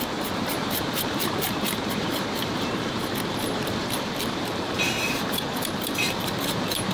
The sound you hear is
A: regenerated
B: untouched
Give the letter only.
A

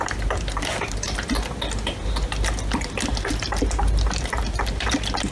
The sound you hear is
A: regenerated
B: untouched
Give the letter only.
B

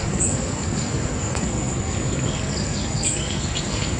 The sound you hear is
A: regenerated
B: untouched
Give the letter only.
A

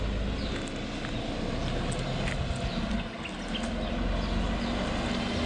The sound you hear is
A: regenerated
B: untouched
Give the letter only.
B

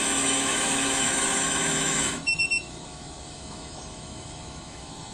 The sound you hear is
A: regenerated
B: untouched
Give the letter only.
A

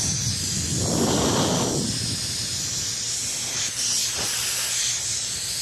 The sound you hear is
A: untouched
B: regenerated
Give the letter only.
A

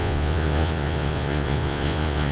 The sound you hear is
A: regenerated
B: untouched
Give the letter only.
A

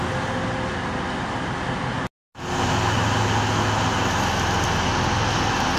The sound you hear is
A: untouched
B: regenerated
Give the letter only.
A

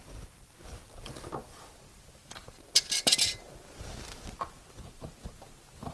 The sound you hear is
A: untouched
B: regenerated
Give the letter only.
A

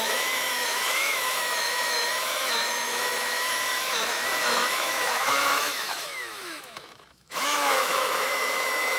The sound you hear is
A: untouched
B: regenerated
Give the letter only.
B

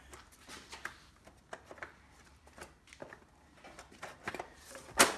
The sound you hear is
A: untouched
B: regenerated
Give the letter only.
A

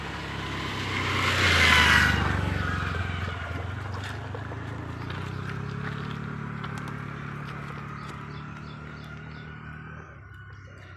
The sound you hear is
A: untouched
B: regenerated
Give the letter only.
A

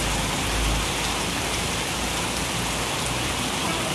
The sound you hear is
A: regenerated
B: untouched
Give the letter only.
B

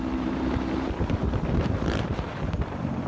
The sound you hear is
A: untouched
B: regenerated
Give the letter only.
B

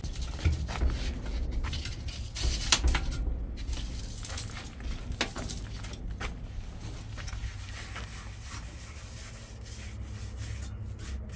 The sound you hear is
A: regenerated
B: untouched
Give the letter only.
B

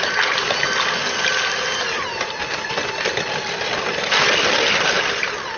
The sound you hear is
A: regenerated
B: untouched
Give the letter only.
B